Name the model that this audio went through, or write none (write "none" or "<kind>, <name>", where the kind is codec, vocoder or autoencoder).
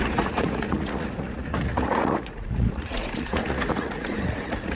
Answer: vocoder, Vocos